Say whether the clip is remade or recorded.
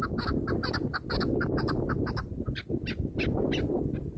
recorded